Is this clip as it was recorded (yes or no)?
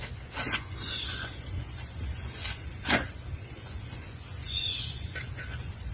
no